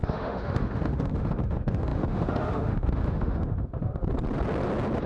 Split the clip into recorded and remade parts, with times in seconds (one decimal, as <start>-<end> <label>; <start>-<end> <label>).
0.0-4.0 remade; 4.0-5.1 recorded